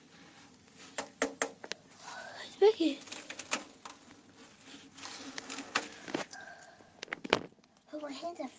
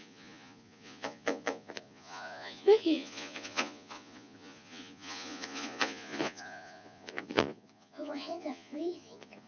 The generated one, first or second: second